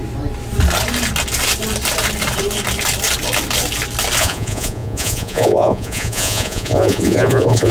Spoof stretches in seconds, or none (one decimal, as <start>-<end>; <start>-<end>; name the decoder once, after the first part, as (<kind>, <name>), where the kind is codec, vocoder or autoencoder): 4.2-7.7 (vocoder, Vocos)